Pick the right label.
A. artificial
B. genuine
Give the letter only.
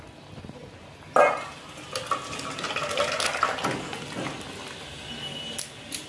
B